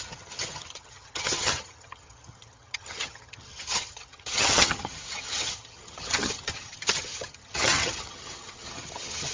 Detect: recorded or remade remade